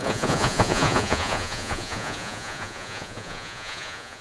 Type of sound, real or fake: fake